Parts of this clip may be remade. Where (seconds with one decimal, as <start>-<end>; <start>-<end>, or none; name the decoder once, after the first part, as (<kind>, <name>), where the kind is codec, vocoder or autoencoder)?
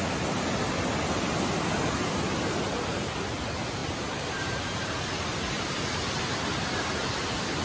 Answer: 3.8-5.0 (vocoder, BigVGAN v2)